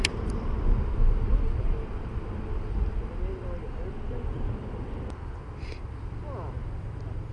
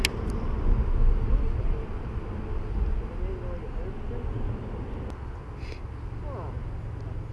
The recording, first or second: second